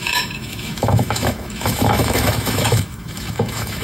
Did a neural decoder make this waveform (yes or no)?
yes